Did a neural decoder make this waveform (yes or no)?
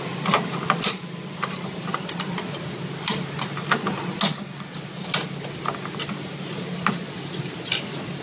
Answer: no